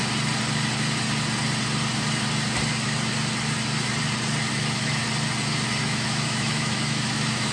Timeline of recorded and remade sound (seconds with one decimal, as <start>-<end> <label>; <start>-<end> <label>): 0.0-4.5 recorded; 4.5-5.0 remade; 5.0-5.8 recorded; 5.8-7.5 remade